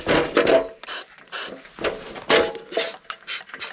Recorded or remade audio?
recorded